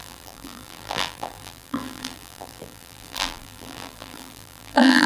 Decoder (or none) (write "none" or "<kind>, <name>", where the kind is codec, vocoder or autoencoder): vocoder, BigVGAN v2